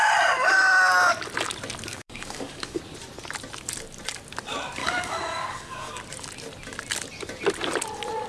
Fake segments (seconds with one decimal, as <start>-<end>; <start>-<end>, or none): 1.9-2.8; 4.8-6.0